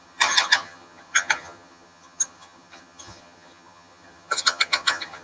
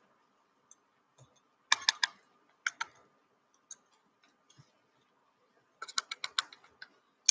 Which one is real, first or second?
second